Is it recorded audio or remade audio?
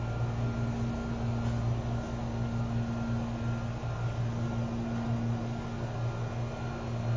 recorded